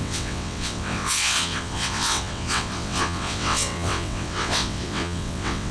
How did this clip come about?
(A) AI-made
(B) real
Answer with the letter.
A